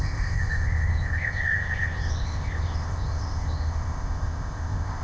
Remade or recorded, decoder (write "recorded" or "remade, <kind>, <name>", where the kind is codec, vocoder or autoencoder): remade, codec, ZipCodec